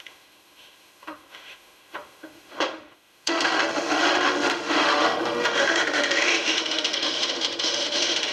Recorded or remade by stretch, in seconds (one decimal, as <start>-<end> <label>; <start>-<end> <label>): 0.0-8.3 remade